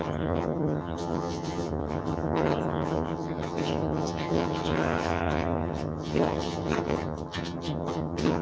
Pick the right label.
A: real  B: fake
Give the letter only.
B